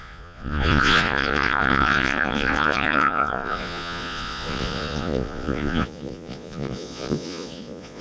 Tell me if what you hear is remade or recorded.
remade